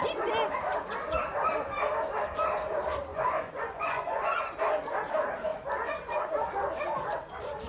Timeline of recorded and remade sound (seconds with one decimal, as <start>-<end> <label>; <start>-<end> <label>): 0.0-3.1 recorded; 3.1-4.4 remade; 4.4-7.7 recorded